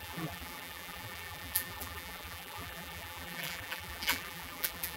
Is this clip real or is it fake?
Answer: fake